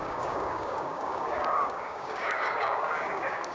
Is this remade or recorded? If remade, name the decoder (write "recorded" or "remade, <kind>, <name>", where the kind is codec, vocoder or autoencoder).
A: remade, codec, DAC